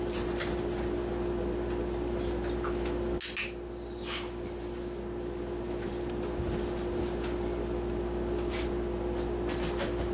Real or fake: real